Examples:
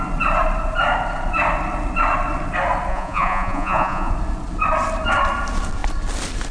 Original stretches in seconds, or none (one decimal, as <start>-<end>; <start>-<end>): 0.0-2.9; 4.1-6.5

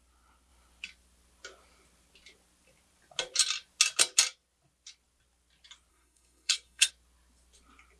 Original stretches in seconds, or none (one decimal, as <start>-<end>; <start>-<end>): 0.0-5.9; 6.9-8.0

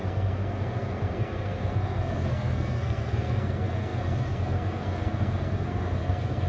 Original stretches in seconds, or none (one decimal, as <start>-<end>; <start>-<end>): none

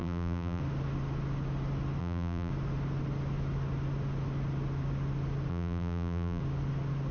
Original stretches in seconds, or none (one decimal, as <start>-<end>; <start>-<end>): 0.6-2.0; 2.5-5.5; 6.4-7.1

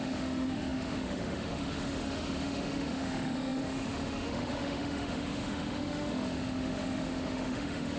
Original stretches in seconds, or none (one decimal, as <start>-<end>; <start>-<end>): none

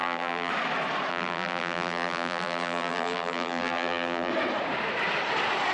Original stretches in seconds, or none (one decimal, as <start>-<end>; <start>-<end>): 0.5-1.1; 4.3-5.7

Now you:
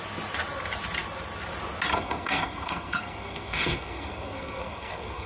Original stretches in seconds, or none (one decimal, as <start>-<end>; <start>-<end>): 0.0-1.9

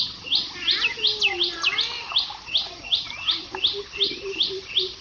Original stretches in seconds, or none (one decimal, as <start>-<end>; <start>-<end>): 0.0-5.0